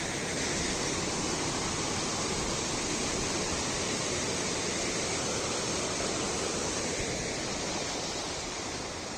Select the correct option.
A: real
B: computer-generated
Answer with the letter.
A